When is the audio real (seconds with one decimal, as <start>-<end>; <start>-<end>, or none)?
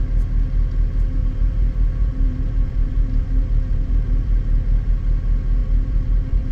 0.0-1.2; 4.9-5.6